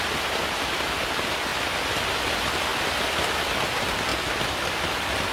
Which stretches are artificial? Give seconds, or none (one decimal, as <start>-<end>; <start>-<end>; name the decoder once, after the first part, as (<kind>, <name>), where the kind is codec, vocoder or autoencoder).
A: 2.7-3.4 (vocoder, BigVGAN v2); 4.1-4.8